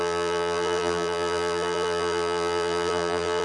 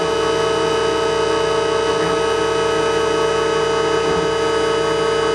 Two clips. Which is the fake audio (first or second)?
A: first